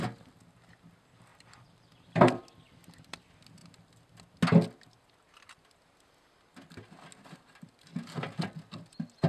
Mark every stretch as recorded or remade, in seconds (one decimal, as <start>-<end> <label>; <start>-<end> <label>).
0.0-1.3 recorded; 1.3-2.4 remade; 2.4-9.3 recorded